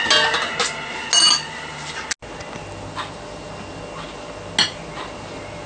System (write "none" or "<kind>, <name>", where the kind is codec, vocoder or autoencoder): none